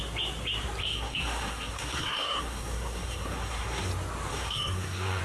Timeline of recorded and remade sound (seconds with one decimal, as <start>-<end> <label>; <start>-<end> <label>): 0.0-0.8 recorded; 0.8-3.9 remade; 3.9-4.3 recorded; 4.3-5.2 remade